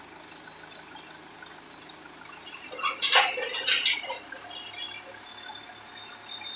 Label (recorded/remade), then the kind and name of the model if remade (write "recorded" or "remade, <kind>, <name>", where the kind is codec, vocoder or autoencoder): recorded